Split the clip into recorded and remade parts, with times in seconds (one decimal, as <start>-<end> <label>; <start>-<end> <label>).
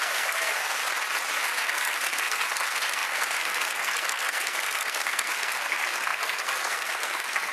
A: 0.0-0.8 remade; 0.8-1.3 recorded; 1.3-7.5 remade